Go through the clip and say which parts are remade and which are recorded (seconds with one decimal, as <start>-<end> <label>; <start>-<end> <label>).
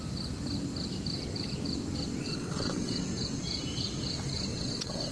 0.0-2.2 recorded; 2.2-3.0 remade; 3.0-4.5 recorded; 4.5-5.1 remade